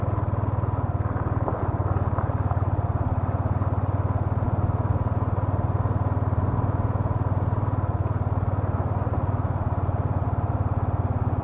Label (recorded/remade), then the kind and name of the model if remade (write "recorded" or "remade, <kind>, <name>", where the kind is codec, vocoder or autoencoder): recorded